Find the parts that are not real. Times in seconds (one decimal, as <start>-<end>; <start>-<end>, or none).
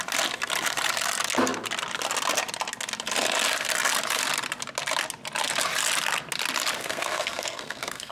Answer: 6.8-8.1